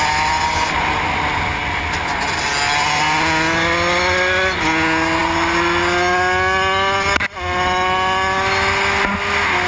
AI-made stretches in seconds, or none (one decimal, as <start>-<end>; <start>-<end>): none